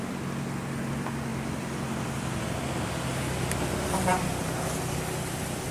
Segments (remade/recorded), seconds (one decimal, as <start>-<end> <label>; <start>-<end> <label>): 0.0-1.3 recorded; 1.3-2.4 remade; 2.4-5.7 recorded